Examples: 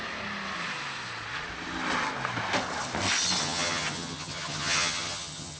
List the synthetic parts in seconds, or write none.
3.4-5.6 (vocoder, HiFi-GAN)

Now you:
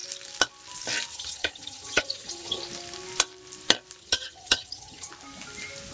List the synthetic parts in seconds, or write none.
1.1-2.6 (vocoder, HiFi-GAN); 4.0-5.1

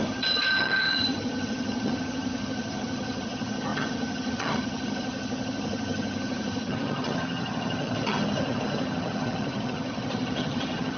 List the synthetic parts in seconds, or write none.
0.0-11.0 (vocoder, HiFi-GAN)

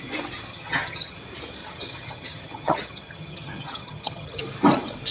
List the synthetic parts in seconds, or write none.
0.5-1.2 (vocoder, HiFi-GAN); 1.6-4.4

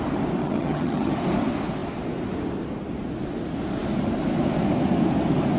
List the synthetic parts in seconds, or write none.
0.4-1.1 (vocoder, HiFi-GAN)

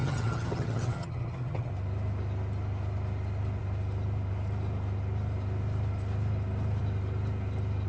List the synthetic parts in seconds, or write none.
0.0-1.7 (vocoder, HiFi-GAN)

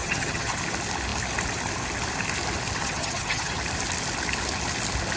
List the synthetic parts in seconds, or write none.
0.0-0.6 (vocoder, HiFi-GAN); 2.8-3.6

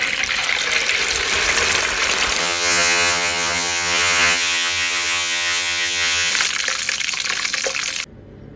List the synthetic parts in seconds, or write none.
2.4-6.3 (vocoder, HiFi-GAN)